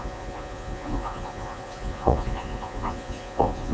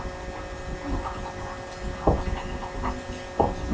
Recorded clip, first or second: second